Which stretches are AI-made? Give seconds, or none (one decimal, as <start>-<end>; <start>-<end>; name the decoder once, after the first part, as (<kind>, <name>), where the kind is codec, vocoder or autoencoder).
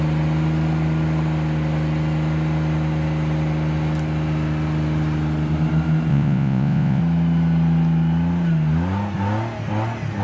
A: 6.1-7.0 (vocoder, Vocos)